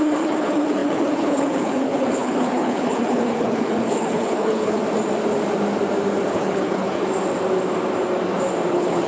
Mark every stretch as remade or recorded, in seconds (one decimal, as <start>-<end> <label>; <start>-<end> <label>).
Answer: 0.0-4.8 remade; 4.8-6.3 recorded; 6.3-7.0 remade; 7.0-8.7 recorded; 8.7-9.1 remade